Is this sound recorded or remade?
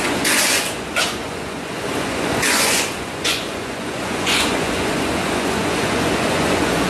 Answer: remade